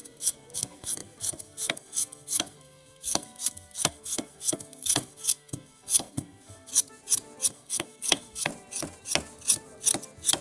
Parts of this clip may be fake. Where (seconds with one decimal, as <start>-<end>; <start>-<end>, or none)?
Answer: 0.0-6.7; 7.5-8.5

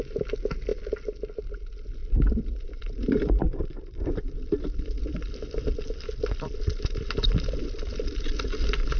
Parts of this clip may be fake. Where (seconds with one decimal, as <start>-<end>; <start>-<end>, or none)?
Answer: 2.0-7.1

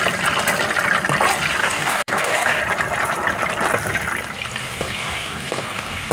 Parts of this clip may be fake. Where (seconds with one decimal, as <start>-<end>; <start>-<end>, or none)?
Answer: 1.6-2.6; 4.6-6.1

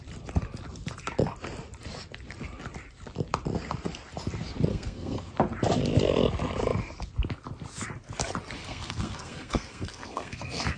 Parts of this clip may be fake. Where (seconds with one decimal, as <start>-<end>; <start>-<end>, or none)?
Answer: 4.7-5.3; 8.6-10.8

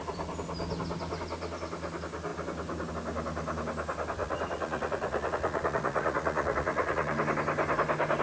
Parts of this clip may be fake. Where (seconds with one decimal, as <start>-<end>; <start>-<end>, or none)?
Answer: 4.2-7.2

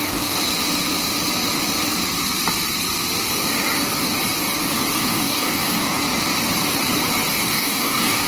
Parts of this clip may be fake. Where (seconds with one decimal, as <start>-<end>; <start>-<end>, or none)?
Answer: 0.0-0.4; 5.0-6.0; 7.3-8.3

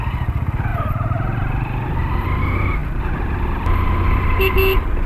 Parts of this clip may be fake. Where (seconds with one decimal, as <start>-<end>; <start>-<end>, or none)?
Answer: 0.7-2.4